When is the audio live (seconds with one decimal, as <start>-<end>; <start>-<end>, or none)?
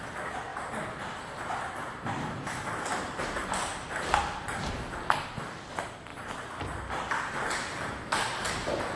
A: 0.0-0.5; 1.2-6.1; 7.1-9.0